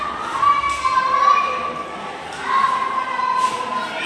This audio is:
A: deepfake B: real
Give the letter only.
B